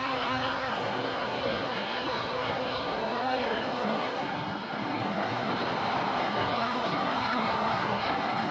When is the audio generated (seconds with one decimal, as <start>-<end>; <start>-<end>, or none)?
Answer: 0.0-5.5; 6.2-8.5